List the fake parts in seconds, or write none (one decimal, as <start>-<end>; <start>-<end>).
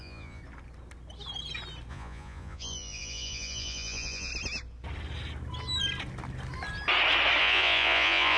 0.0-0.4; 1.9-4.3; 7.4-8.4